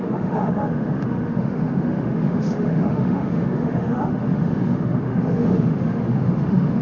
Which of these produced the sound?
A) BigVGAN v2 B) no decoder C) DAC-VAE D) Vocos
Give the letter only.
C